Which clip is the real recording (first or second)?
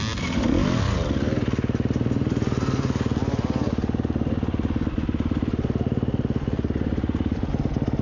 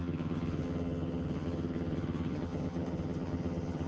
first